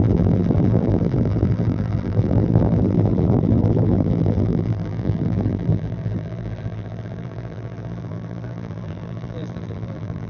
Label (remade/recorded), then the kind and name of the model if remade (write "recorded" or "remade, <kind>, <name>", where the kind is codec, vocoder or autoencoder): remade, vocoder, BigVGAN v2